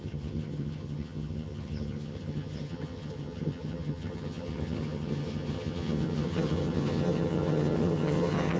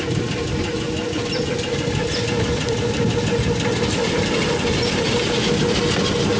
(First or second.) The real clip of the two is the second